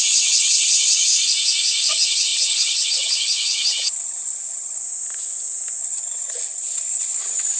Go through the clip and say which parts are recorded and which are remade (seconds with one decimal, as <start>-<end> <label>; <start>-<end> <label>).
0.0-1.1 remade; 1.1-1.9 recorded; 1.9-4.8 remade; 4.8-5.8 recorded; 5.8-7.6 remade